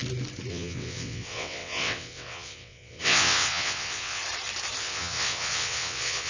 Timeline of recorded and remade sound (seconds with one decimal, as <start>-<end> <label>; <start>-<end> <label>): 0.0-0.5 recorded; 0.5-4.2 remade; 4.2-4.8 recorded; 4.8-6.3 remade